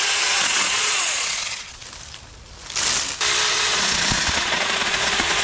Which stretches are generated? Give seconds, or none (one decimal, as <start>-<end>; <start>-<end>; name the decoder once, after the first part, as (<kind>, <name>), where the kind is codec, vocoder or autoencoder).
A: 0.0-1.8 (vocoder, Vocos); 3.5-5.4